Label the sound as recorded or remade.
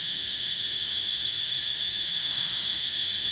remade